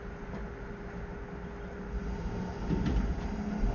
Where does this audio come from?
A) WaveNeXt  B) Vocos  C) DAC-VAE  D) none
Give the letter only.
D